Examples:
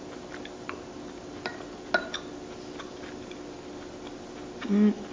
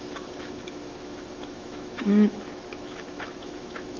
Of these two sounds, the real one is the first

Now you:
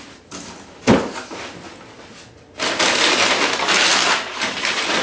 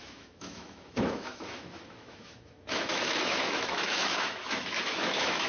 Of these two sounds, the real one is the first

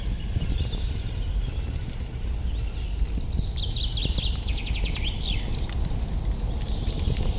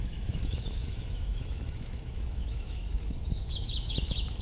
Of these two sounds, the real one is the first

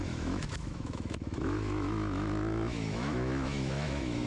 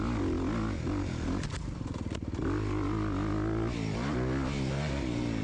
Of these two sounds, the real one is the second